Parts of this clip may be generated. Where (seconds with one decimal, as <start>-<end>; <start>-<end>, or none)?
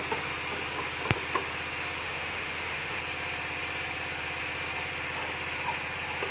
2.0-3.0